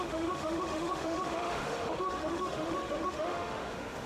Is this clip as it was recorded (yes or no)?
no